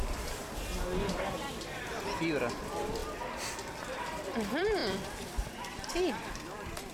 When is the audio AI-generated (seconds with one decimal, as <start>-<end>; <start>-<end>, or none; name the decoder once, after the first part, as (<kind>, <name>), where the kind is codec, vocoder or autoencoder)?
0.0-0.4 (vocoder, BigVGAN v2); 1.1-6.9